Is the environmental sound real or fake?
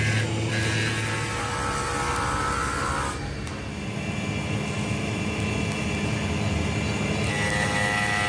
real